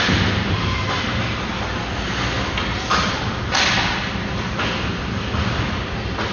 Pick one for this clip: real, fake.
real